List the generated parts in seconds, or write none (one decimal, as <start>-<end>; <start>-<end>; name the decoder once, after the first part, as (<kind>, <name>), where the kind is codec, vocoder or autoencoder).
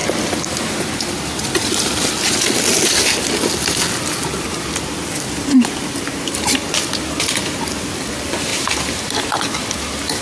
8.5-9.4 (vocoder, BigVGAN v2)